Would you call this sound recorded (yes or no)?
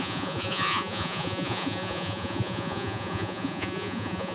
no